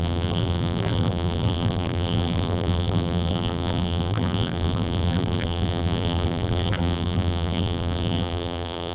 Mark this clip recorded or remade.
remade